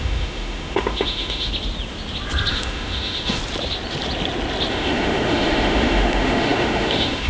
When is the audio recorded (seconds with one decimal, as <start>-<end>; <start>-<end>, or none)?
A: 1.5-2.5; 3.4-4.7